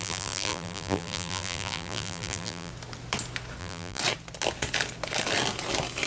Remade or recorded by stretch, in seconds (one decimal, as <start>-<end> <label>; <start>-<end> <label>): 0.0-2.7 remade; 2.7-3.6 recorded; 3.6-4.0 remade; 4.0-6.1 recorded